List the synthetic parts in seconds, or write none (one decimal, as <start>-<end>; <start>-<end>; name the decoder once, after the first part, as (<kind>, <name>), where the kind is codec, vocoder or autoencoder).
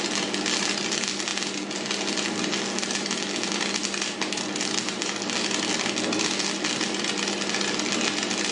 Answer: none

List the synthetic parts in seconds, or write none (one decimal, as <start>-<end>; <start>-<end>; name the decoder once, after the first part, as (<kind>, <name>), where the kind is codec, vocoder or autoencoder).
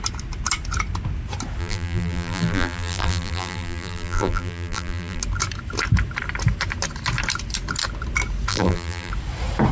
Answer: 1.6-5.2 (vocoder, BigVGAN v2); 8.5-9.1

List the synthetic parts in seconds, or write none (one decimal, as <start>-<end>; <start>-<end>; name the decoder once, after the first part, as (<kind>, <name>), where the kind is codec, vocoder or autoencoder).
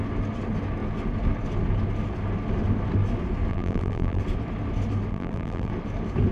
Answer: 3.5-4.2 (vocoder, BigVGAN v2); 5.1-5.7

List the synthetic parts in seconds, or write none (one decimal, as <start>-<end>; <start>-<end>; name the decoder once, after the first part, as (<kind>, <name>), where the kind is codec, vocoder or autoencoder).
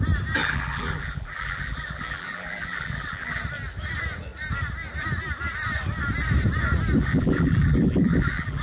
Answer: 0.4-3.4 (vocoder, BigVGAN v2); 7.0-8.6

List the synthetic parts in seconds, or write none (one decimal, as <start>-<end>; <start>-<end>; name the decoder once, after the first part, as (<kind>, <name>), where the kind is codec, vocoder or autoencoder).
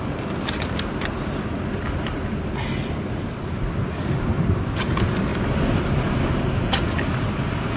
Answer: none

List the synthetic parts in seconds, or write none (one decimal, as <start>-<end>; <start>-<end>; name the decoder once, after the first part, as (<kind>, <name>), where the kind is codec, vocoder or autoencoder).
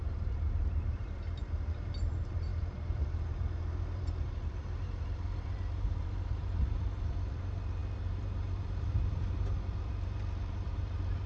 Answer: 0.0-11.3 (vocoder, BigVGAN v2)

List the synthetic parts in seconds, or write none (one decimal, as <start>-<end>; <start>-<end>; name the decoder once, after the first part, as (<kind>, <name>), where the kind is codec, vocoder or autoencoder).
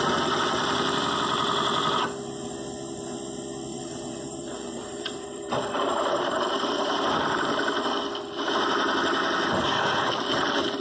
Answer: 3.7-7.4 (vocoder, BigVGAN v2)